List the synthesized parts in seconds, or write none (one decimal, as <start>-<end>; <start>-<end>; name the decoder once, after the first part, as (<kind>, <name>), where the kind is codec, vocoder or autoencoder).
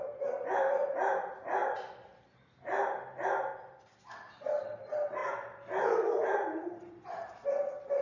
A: 1.6-2.4 (vocoder, BigVGAN v2); 5.2-8.0